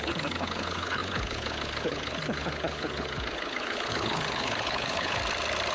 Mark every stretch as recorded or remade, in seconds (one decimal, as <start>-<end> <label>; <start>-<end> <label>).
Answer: 0.0-5.2 remade; 5.2-5.7 recorded